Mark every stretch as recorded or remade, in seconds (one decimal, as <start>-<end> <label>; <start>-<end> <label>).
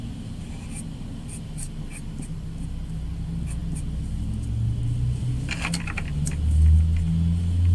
0.0-7.7 recorded